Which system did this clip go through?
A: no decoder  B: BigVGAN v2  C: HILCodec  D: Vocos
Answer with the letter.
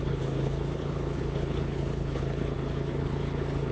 C